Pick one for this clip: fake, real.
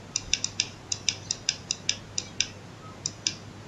real